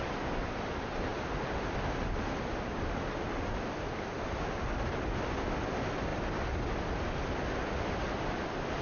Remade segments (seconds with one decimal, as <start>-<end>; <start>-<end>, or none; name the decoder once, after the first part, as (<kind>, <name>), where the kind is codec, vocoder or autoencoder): none